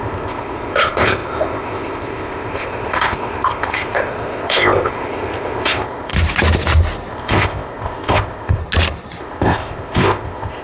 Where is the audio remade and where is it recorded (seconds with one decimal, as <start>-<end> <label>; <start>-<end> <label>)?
0.0-6.1 remade; 6.1-7.1 recorded; 7.1-8.6 remade; 8.6-9.2 recorded; 9.2-10.6 remade